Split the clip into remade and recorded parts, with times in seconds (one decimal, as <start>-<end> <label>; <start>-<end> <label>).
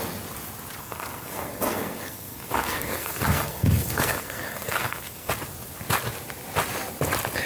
0.0-0.8 recorded; 0.8-5.3 remade; 5.3-7.5 recorded